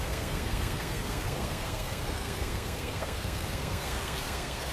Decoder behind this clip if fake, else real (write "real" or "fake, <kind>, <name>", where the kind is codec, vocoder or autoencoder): fake, codec, SNAC